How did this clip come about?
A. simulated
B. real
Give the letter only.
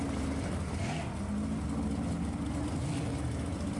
B